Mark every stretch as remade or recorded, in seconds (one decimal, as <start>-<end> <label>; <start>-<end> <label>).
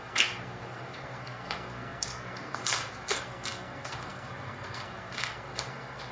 0.0-6.1 remade